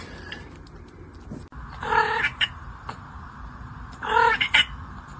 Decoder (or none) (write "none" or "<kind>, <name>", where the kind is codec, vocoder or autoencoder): none